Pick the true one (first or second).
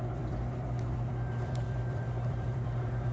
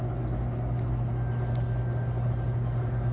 second